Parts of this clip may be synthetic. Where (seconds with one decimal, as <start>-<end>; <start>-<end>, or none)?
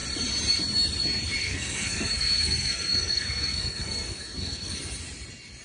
1.4-4.8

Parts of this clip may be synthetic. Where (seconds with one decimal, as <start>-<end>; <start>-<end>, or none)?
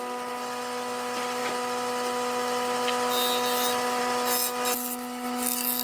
none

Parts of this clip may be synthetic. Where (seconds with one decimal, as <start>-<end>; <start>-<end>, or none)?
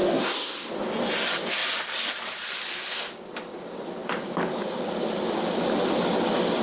0.0-0.7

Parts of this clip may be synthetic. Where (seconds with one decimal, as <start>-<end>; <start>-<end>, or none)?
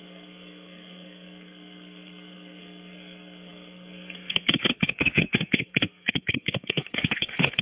0.0-7.6